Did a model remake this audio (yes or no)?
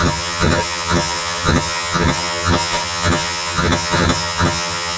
yes